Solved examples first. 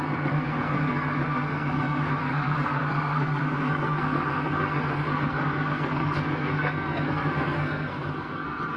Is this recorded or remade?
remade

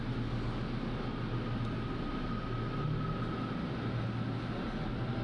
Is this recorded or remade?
recorded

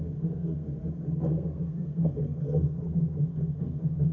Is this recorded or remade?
remade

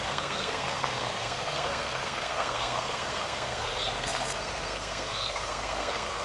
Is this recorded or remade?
remade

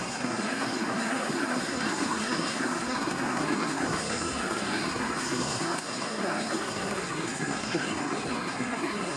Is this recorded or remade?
remade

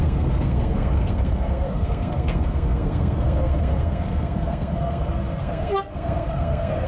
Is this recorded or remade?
remade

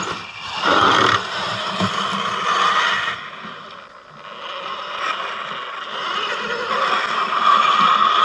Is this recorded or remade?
recorded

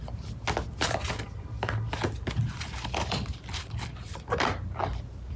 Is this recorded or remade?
recorded